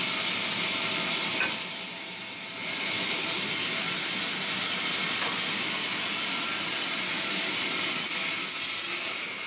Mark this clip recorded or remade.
recorded